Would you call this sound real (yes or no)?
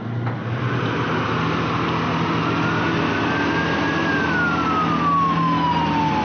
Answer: yes